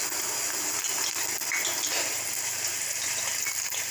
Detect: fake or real real